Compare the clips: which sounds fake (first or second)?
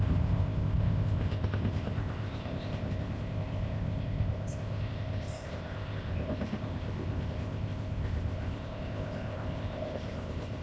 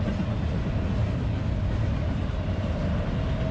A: first